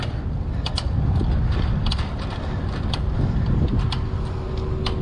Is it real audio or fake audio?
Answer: real